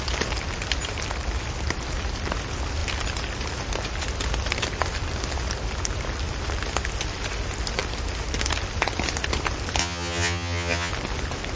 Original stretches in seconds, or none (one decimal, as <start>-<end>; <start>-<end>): 0.0-9.8; 10.9-11.6